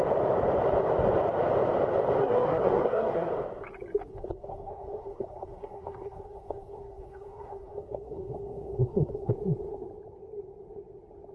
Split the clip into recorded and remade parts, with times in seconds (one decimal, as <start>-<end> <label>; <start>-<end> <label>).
0.0-2.2 recorded; 2.2-3.3 remade; 3.3-4.1 recorded; 4.1-9.3 remade; 9.3-11.3 recorded